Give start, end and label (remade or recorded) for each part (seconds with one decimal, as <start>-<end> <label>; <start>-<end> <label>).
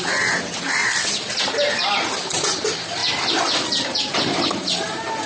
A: 0.0-5.3 recorded